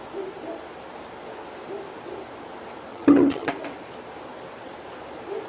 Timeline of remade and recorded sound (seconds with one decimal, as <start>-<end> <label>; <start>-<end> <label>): 0.0-2.9 recorded; 2.9-3.5 remade; 3.5-5.5 recorded